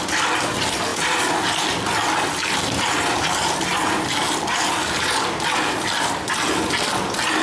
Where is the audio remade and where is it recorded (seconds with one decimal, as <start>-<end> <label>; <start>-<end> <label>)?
0.0-7.4 recorded